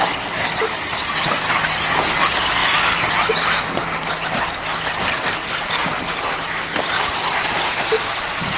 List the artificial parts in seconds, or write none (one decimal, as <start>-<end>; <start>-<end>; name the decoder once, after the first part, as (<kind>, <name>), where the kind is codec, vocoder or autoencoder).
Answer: none